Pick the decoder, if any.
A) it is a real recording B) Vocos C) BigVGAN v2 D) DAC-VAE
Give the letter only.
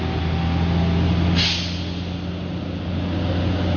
A